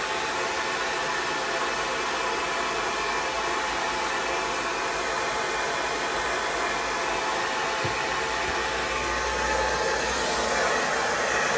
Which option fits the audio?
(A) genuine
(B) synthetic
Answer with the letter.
A